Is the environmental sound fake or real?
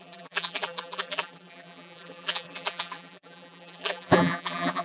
fake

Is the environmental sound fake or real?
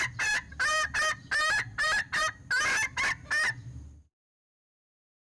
real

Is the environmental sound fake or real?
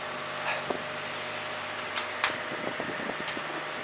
real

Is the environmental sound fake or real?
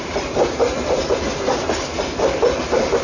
real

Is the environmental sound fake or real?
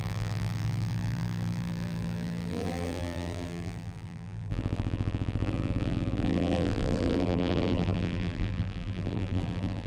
fake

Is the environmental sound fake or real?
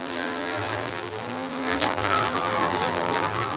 fake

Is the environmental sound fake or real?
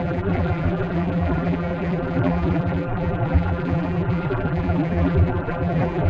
fake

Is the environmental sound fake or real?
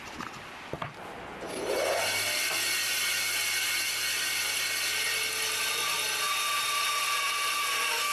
real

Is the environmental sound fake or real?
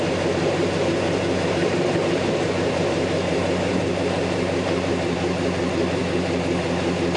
fake